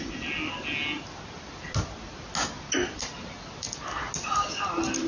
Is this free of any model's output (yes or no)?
yes